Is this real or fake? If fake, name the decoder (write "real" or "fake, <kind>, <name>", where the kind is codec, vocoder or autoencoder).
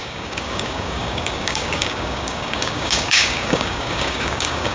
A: fake, codec, DAC